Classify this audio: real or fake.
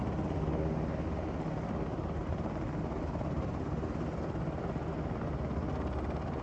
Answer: real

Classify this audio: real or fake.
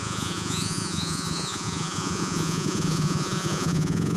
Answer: fake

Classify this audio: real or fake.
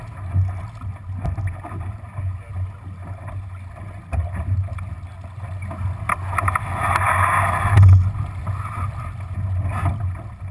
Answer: real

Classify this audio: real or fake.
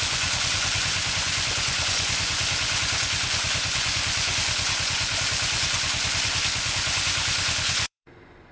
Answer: fake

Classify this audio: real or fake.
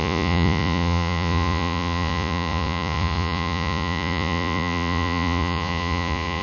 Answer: fake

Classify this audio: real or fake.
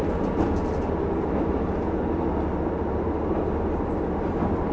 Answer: real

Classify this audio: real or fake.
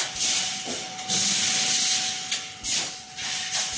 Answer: real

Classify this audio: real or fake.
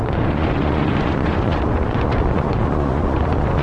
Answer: fake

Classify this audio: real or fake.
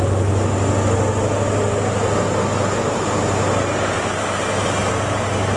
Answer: real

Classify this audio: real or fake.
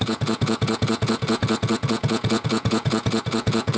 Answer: fake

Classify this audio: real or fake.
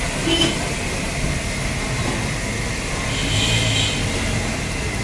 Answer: real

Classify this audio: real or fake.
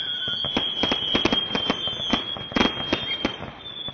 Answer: real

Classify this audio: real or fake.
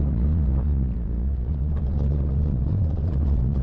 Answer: fake